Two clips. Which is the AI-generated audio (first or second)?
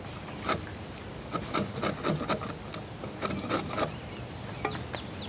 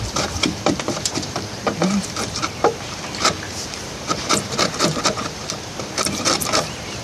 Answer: second